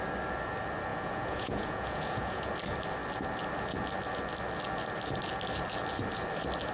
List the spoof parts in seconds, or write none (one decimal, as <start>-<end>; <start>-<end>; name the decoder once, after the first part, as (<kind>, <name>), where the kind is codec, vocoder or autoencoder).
0.9-2.5 (vocoder, Vocos)